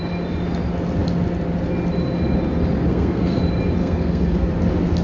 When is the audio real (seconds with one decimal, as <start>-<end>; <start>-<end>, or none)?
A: 0.0-2.9; 3.4-3.8; 4.5-5.0